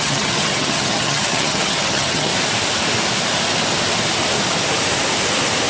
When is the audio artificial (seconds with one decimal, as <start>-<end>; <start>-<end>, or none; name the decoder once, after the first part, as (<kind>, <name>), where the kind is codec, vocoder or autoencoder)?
0.0-2.3 (vocoder, HiFi-GAN)